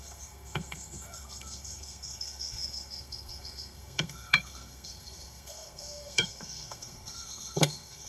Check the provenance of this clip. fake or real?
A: fake